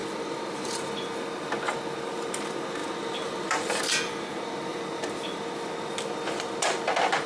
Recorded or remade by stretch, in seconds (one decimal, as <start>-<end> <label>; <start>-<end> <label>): 0.0-2.8 recorded; 2.8-3.8 remade; 3.8-4.7 recorded; 4.7-5.2 remade; 5.2-7.3 recorded